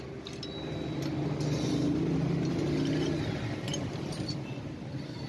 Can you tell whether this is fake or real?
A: real